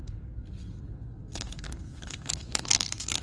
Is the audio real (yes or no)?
no